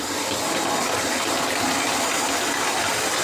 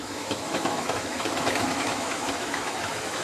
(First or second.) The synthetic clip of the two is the second